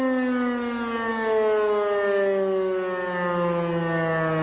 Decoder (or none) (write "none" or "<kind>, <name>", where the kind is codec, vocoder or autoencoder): none